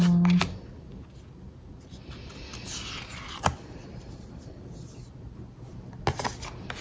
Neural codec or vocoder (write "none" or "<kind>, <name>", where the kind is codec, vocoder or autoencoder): none